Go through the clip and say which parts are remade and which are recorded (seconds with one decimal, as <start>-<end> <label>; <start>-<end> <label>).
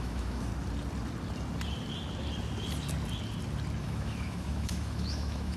0.0-0.5 remade; 0.5-3.8 recorded; 3.8-5.6 remade